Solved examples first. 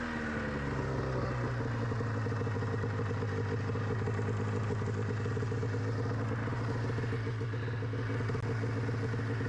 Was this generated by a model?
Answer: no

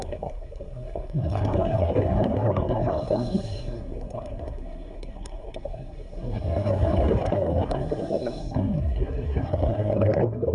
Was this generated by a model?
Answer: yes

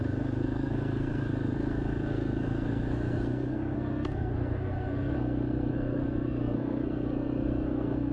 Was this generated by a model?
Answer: yes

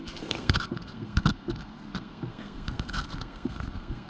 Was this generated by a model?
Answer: yes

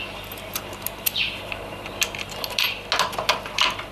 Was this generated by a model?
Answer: no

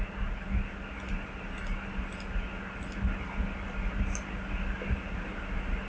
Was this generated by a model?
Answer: no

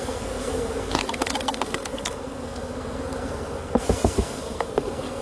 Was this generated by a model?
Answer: yes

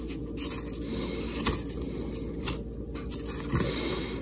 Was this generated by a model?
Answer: no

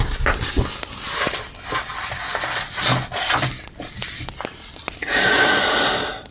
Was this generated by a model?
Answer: no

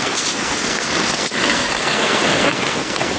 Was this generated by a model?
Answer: yes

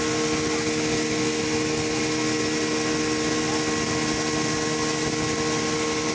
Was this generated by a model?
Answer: no